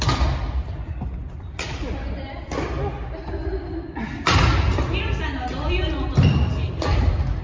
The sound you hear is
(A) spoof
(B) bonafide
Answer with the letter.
B